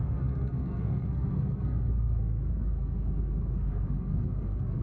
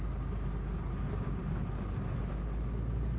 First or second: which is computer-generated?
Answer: first